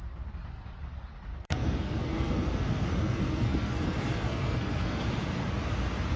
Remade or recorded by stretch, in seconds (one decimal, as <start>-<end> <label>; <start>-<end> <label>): 0.0-1.3 recorded; 1.3-5.0 remade; 5.0-6.2 recorded

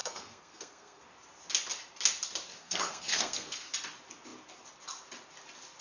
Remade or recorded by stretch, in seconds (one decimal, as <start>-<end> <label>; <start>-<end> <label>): 0.0-1.0 remade; 1.0-2.6 recorded; 2.6-3.7 remade; 3.7-5.8 recorded

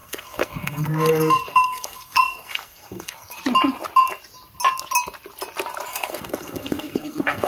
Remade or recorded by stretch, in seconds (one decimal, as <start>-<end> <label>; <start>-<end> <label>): 0.0-3.4 remade; 3.4-5.9 recorded; 5.9-7.5 remade

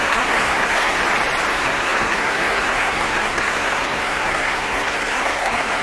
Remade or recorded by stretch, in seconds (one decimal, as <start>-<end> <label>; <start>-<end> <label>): 0.0-1.0 remade; 1.0-1.5 recorded; 1.5-5.8 remade

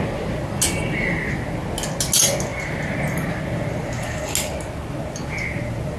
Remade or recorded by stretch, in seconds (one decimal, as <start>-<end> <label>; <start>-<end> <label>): 0.0-6.0 recorded

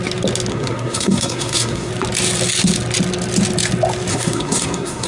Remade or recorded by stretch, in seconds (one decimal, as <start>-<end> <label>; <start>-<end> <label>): 0.0-0.5 recorded; 0.5-1.9 remade; 1.9-4.1 recorded; 4.1-5.1 remade

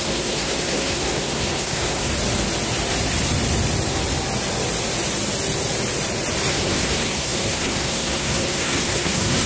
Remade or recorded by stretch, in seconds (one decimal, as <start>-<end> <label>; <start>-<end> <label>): 0.0-2.1 remade; 2.1-6.5 recorded; 6.5-9.5 remade